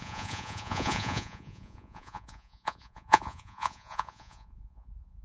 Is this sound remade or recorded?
remade